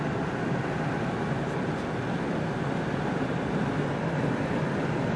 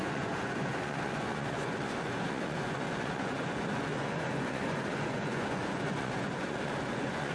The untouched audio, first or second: first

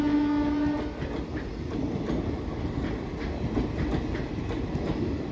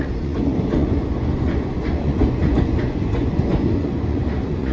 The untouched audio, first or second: first